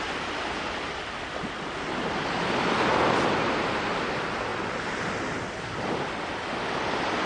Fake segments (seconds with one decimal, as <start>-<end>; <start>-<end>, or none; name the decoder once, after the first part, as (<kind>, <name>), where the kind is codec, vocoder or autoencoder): none